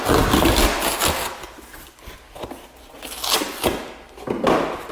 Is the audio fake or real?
real